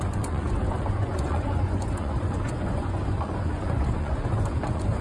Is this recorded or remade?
remade